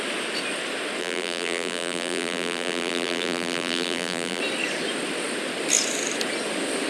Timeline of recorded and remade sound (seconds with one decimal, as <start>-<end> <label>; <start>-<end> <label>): 0.0-1.0 recorded; 1.0-4.4 remade; 4.4-6.9 recorded